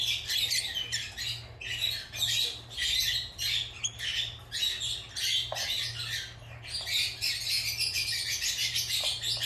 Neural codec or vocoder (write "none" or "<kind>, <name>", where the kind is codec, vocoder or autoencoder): none